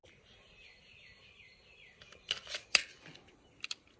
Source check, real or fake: real